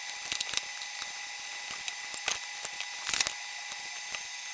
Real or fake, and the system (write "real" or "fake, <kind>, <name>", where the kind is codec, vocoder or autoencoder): real